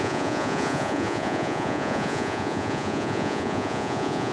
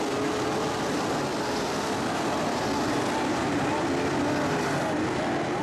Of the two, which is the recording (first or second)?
second